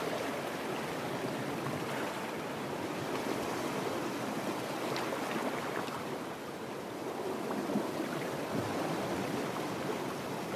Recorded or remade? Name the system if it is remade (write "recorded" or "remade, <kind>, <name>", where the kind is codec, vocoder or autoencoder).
recorded